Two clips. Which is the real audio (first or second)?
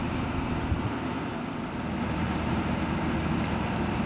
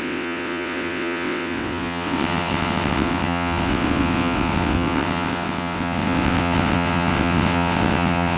first